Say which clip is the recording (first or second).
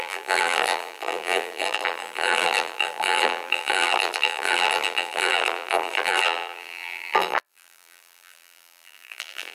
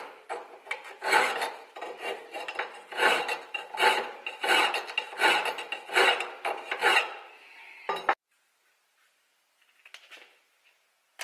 second